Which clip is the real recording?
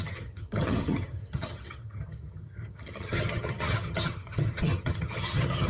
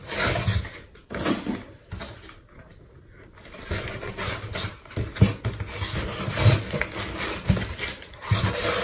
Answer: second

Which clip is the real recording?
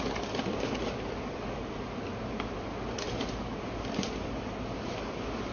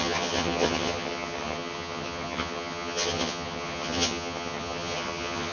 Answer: first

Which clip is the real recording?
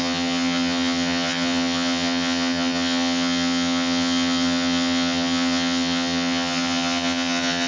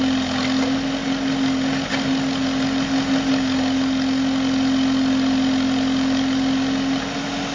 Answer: second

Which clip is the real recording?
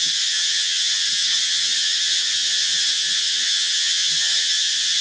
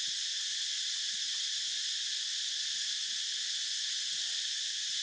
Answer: second